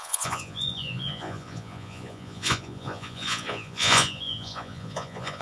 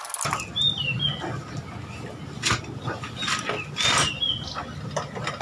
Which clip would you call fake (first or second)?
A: first